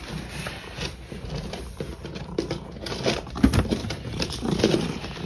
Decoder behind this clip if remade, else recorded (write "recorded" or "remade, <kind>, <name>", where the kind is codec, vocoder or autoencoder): recorded